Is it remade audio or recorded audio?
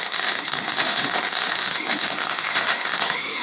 remade